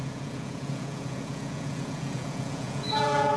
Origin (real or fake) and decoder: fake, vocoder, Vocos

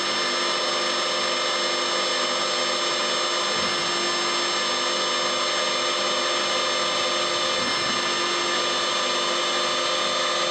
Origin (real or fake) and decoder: real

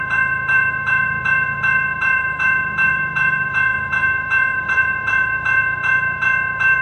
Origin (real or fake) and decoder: fake, vocoder, Vocos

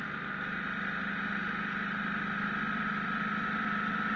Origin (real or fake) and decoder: real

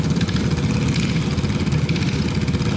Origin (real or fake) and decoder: real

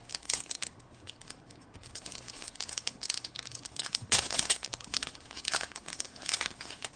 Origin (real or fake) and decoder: fake, codec, SNAC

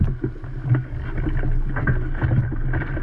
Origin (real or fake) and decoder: real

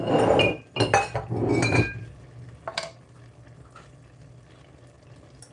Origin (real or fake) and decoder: real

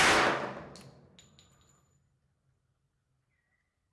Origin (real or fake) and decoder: real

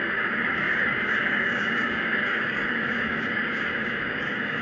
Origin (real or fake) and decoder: fake, codec, DAC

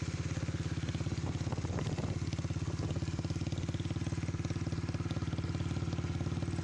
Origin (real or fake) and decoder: real